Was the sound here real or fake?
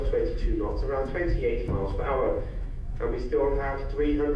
fake